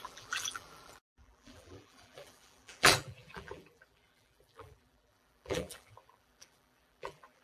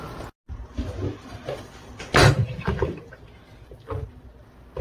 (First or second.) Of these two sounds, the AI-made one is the first